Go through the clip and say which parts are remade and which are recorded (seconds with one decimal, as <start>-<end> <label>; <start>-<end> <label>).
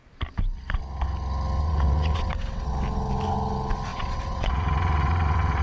0.0-1.6 recorded; 1.6-2.7 remade; 2.7-3.9 recorded; 3.9-5.6 remade